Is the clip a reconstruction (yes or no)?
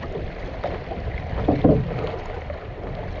no